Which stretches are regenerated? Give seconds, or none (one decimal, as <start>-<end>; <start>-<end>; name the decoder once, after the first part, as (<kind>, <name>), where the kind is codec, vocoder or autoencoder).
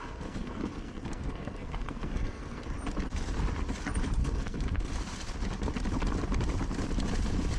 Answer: 0.0-2.6 (codec, SNAC); 4.2-4.9